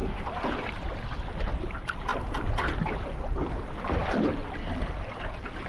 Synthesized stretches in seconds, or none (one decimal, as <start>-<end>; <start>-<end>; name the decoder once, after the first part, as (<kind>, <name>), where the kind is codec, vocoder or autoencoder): none